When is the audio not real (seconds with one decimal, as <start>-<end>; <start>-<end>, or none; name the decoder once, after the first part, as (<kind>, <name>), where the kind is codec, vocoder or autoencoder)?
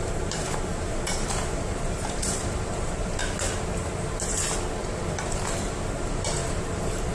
0.0-3.2 (vocoder, BigVGAN v2); 6.0-7.1